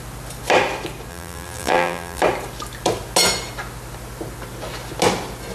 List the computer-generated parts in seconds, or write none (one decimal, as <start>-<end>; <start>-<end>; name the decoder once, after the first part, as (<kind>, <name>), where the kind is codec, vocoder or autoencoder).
1.1-2.2 (vocoder, BigVGAN v2)